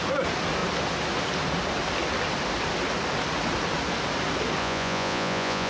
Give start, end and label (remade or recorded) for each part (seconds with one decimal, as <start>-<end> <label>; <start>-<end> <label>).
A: 0.0-4.6 recorded; 4.6-5.7 remade